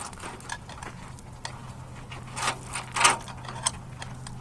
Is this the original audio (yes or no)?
yes